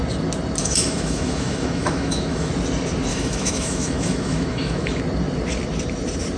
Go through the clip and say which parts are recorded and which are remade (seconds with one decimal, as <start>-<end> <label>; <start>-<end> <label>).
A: 0.0-0.6 recorded; 0.6-2.5 remade; 2.5-3.1 recorded; 3.1-5.0 remade; 5.0-6.4 recorded